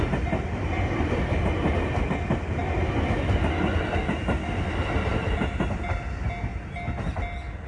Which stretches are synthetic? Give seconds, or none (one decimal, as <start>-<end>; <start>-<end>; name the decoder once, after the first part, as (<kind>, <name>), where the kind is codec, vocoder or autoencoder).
none